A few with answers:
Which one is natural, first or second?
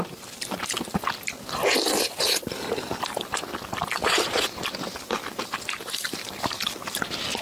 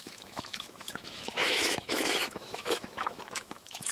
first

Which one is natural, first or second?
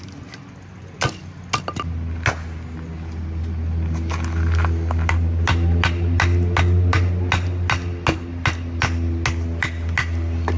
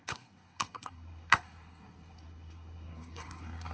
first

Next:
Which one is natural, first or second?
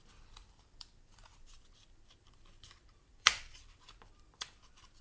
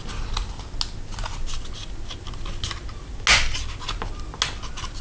second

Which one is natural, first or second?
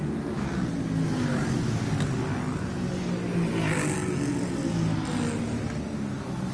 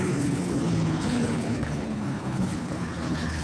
first